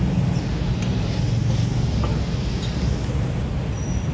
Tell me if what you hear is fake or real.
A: real